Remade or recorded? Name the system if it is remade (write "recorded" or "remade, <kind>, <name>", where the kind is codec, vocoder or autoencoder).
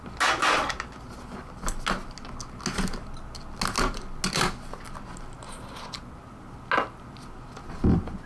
recorded